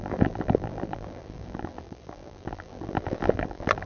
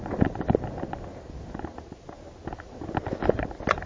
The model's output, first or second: first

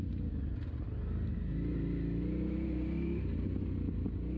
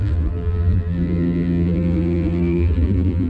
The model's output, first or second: second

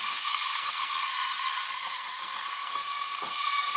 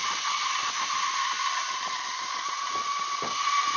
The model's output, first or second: first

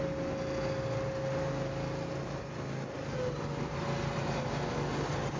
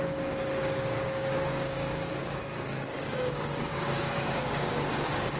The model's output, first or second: second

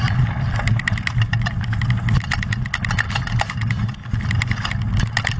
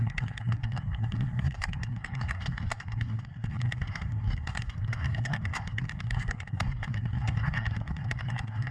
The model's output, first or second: second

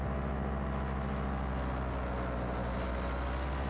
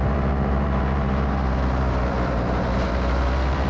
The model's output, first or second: second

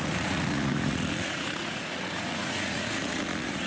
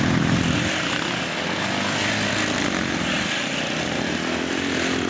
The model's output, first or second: first